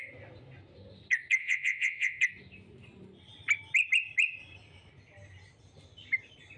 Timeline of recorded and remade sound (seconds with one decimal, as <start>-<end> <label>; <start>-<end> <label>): 0.0-1.4 recorded; 1.4-2.2 remade; 2.2-6.6 recorded